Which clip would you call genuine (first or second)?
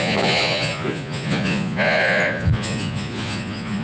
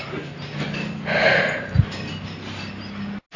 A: second